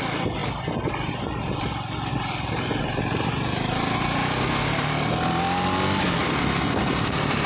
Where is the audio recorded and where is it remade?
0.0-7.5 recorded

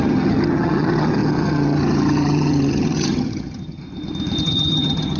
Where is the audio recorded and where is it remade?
0.0-3.8 remade; 3.8-4.4 recorded; 4.4-5.2 remade